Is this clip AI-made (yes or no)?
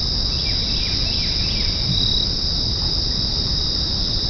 no